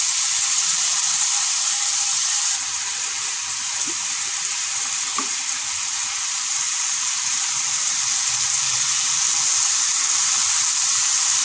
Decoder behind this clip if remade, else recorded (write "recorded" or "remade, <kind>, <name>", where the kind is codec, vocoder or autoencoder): remade, vocoder, BigVGAN v2